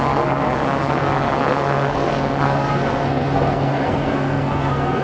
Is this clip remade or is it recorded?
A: remade